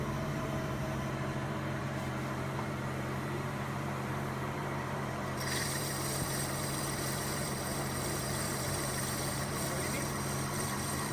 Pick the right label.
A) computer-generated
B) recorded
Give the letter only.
A